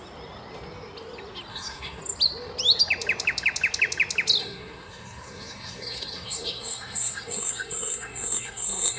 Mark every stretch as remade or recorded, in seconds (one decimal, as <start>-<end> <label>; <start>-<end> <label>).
0.0-1.5 recorded; 1.5-2.0 remade; 2.0-4.4 recorded; 4.4-9.0 remade